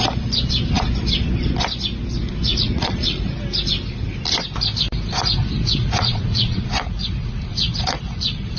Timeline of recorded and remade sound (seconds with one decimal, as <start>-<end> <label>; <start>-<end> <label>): 0.0-2.5 recorded; 2.5-3.3 remade; 3.3-5.8 recorded; 5.8-8.6 remade